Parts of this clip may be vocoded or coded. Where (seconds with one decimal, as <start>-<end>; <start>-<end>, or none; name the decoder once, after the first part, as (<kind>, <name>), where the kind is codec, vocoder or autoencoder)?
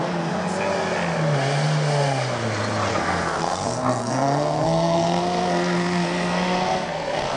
2.9-7.4 (codec, SNAC)